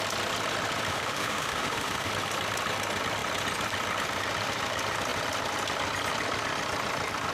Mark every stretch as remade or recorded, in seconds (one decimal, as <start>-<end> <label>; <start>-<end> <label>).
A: 0.0-0.9 recorded; 0.9-2.1 remade; 2.1-7.3 recorded